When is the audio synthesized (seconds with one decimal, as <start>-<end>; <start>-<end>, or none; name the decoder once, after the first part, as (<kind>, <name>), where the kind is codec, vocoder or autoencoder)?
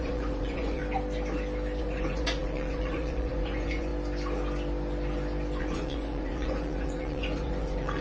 0.0-0.8 (vocoder, Vocos); 1.8-3.9; 5.6-8.0